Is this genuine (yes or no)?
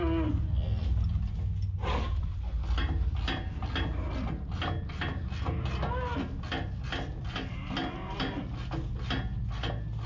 yes